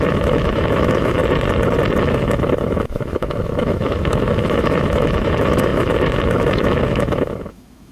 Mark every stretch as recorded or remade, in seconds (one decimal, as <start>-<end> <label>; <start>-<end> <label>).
0.0-1.2 remade; 1.2-2.0 recorded; 2.0-7.9 remade